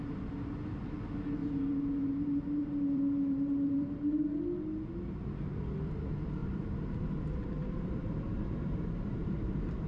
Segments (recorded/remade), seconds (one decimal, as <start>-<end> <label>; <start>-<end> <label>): 0.0-1.4 recorded; 1.4-4.1 remade; 4.1-6.4 recorded; 6.4-7.1 remade; 7.1-7.6 recorded; 7.6-9.9 remade